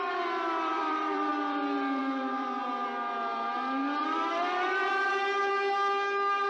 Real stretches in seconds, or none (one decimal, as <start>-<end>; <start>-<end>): 0.0-0.7; 1.3-2.0; 2.6-4.0; 4.9-6.5